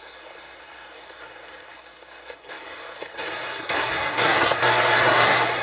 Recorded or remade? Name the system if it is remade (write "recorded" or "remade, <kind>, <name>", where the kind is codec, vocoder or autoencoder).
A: remade, codec, SNAC